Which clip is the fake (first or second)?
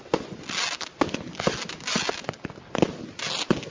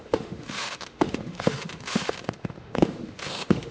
second